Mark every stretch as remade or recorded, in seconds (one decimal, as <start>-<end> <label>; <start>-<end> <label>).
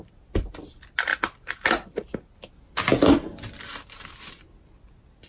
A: 0.0-5.3 recorded